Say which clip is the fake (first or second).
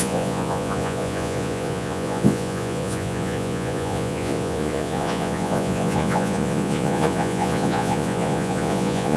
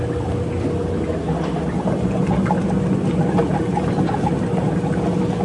first